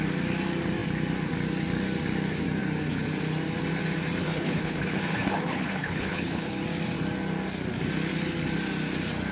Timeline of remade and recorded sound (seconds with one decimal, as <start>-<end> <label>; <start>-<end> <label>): 0.0-4.2 recorded; 4.2-6.5 remade; 6.5-9.3 recorded